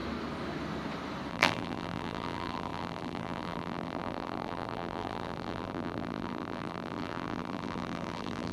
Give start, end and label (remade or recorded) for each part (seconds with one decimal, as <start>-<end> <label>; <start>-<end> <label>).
0.0-1.3 recorded; 1.3-8.5 remade